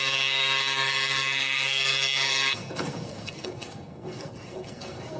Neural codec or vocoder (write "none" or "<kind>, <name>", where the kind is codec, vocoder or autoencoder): codec, SNAC